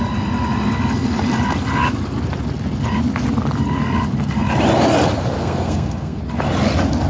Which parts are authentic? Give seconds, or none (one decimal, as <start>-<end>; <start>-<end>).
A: 0.0-5.4; 6.2-7.1